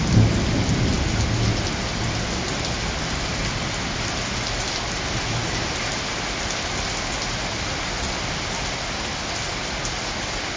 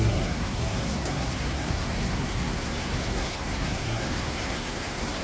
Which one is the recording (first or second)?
first